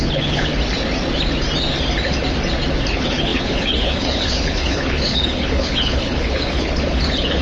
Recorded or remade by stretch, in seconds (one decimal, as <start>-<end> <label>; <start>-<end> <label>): 0.0-0.5 remade; 0.5-2.9 recorded; 2.9-7.4 remade